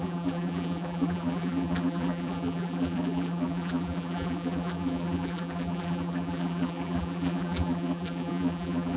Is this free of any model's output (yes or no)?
no